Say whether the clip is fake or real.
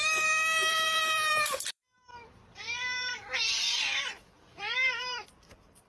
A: fake